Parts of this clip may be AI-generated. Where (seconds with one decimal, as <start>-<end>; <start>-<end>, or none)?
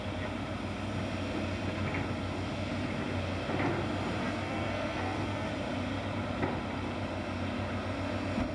4.2-5.5